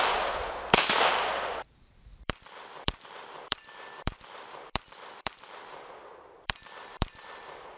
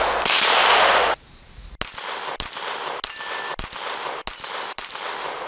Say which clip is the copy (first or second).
first